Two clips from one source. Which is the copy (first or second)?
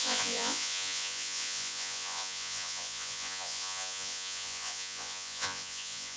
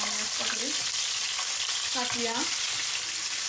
first